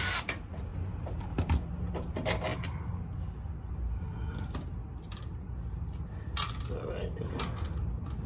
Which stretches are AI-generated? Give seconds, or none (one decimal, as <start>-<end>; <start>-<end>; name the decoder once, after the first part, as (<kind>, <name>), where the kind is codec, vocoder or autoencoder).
none